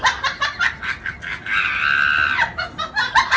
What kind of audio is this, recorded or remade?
recorded